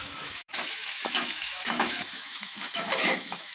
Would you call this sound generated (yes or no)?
yes